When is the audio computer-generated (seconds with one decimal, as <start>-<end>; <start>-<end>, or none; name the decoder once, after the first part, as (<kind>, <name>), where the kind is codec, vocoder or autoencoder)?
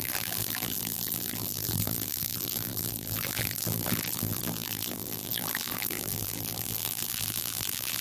0.0-8.0 (vocoder, BigVGAN v2)